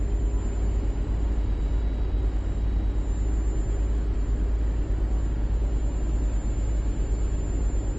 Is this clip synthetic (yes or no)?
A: no